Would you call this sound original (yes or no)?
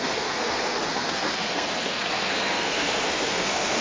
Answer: no